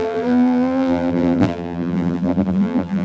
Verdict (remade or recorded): remade